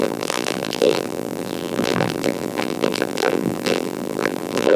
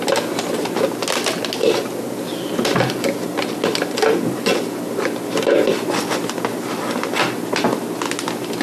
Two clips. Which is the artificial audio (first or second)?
first